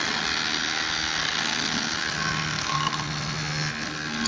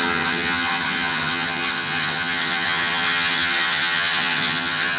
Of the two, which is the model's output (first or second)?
second